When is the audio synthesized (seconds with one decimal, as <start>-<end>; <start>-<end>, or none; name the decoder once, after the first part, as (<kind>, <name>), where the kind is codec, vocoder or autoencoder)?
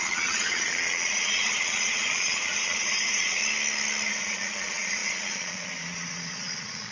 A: 0.0-3.4 (vocoder, Vocos); 4.1-6.9